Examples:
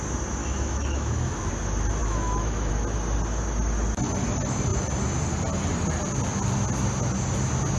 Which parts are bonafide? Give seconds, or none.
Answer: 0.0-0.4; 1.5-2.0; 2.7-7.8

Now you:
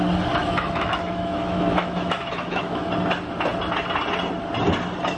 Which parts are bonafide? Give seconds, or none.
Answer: 0.0-0.4; 2.9-5.2

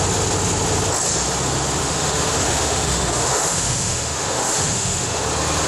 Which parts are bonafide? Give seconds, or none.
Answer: 0.0-1.8; 5.2-5.7

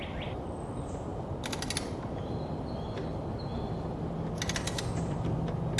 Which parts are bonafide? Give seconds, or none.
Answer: 0.0-5.8

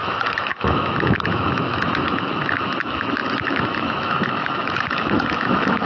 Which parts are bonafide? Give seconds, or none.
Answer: none